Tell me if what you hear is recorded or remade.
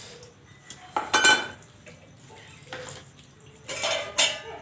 recorded